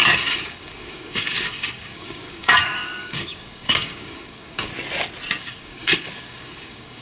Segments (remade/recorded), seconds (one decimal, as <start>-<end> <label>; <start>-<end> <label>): 0.0-4.7 remade; 4.7-5.4 recorded; 5.4-7.0 remade